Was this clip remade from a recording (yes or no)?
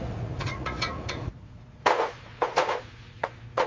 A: yes